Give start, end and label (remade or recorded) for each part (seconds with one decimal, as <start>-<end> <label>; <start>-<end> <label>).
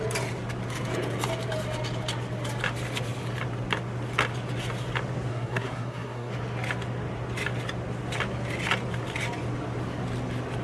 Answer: 0.0-5.3 recorded; 5.3-6.3 remade; 6.3-10.6 recorded